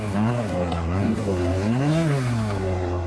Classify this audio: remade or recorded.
remade